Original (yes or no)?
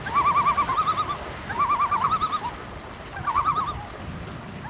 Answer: yes